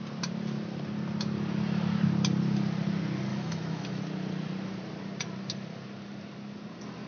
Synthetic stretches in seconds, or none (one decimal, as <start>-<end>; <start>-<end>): 3.3-4.0